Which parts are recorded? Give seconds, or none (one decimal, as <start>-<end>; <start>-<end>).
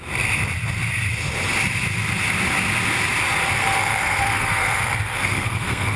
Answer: 0.0-3.6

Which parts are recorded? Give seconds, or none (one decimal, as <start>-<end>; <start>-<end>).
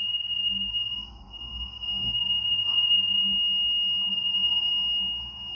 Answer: 3.2-4.1; 4.7-5.5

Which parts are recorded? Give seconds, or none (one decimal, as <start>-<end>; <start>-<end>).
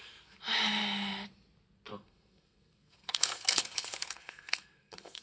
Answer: 0.0-1.9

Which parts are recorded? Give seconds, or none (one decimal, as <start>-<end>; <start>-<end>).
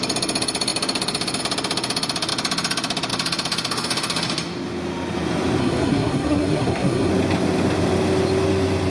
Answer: 0.0-5.6; 7.1-8.9